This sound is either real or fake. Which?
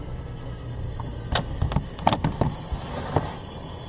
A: real